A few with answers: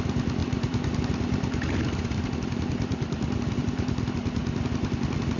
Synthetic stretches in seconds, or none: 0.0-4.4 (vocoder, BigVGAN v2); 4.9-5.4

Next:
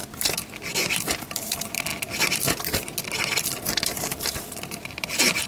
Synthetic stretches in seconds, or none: 1.4-1.9 (vocoder, BigVGAN v2); 3.8-5.5

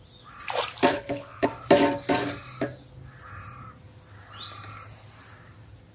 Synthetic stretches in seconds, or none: 0.9-1.5 (codec, HILCodec)

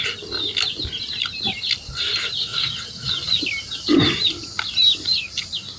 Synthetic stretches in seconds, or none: 2.5-3.1 (vocoder, WaveNeXt)

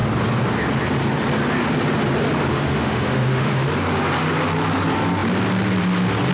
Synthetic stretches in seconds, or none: 2.5-3.7 (autoencoder, DAC-VAE)

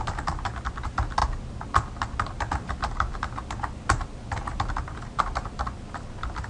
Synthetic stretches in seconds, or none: none